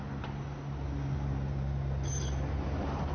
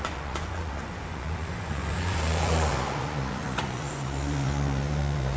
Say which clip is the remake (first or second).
second